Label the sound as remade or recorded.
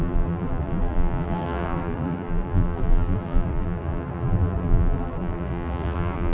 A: remade